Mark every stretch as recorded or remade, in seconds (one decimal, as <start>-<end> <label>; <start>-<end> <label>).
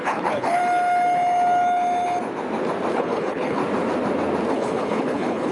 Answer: 0.0-0.6 remade; 0.6-2.9 recorded; 2.9-3.6 remade; 3.6-4.5 recorded; 4.5-5.5 remade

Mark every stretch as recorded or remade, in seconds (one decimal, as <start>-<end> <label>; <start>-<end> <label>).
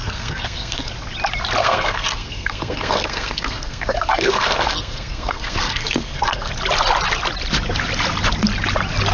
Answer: 0.0-0.9 remade; 0.9-1.6 recorded; 1.6-6.5 remade; 6.5-9.1 recorded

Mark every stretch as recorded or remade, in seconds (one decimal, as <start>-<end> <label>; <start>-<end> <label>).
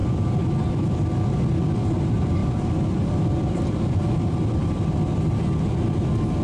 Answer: 0.0-2.4 recorded; 2.4-4.9 remade; 4.9-6.4 recorded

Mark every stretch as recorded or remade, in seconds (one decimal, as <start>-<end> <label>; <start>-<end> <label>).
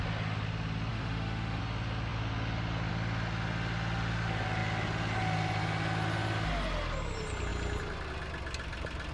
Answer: 0.0-0.9 recorded; 0.9-1.6 remade; 1.6-9.1 recorded